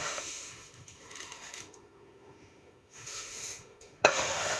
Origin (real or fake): fake